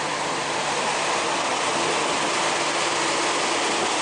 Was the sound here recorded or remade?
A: recorded